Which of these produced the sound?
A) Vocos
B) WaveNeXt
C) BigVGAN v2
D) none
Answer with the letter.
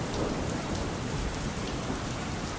C